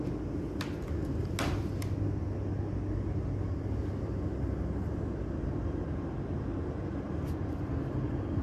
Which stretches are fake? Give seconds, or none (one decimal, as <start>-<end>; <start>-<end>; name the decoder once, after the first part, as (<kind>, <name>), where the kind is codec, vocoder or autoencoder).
none